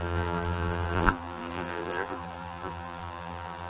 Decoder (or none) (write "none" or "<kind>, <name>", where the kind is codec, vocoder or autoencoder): vocoder, BigVGAN v2